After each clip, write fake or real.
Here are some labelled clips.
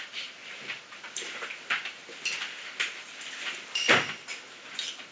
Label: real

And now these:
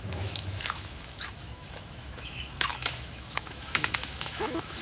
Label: fake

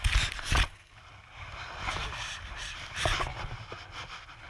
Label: real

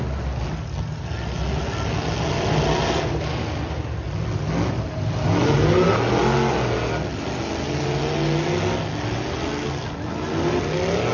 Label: real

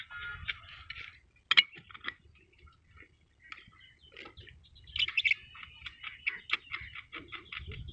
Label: real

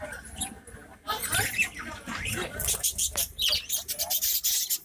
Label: real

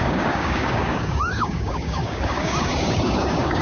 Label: fake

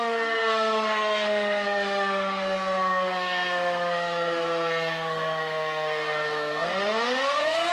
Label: fake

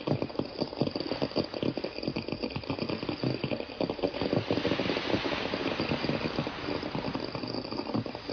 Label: real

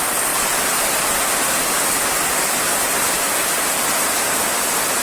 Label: real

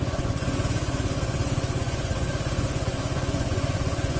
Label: fake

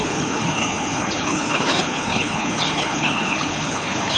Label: fake